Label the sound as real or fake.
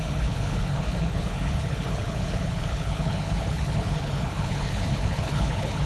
fake